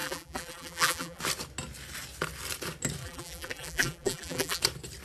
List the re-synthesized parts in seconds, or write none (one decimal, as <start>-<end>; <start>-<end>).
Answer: 0.0-1.2; 3.0-4.6